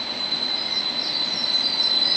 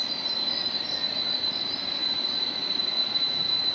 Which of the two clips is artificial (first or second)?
second